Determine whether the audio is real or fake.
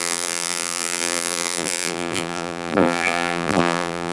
fake